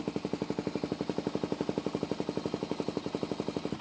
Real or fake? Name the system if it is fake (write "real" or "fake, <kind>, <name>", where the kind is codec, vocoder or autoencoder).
real